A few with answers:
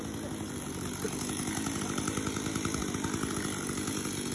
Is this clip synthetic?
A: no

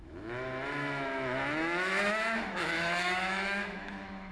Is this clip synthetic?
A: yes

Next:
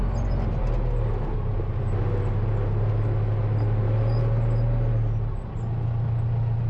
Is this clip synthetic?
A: no